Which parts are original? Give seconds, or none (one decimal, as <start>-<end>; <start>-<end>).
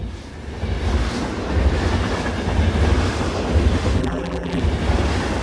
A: 0.0-4.0; 4.6-5.4